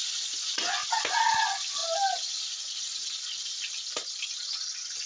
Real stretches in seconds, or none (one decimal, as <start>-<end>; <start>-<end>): 0.0-5.1